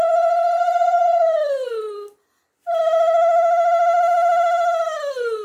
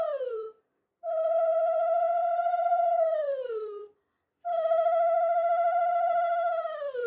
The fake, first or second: second